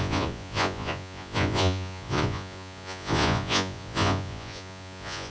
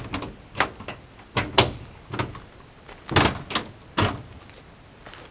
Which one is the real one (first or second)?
second